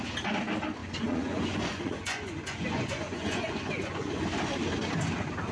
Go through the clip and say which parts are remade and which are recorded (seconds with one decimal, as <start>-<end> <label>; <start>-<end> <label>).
0.0-0.8 recorded; 0.8-4.1 remade; 4.1-5.5 recorded